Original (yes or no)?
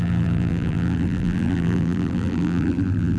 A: no